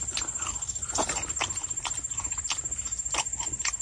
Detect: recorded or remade recorded